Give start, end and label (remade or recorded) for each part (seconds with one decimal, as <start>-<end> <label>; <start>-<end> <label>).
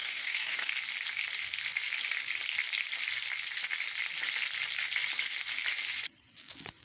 0.0-0.7 remade; 0.7-6.8 recorded